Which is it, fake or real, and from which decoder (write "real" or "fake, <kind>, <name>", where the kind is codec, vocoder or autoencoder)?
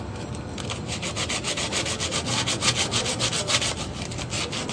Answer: real